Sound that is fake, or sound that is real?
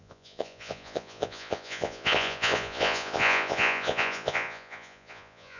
fake